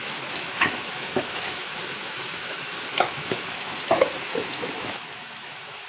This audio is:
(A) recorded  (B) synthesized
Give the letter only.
B